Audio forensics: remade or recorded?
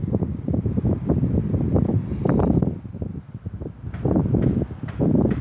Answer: recorded